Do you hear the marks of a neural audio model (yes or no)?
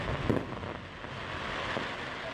no